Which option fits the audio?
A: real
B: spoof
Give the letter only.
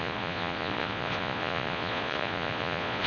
B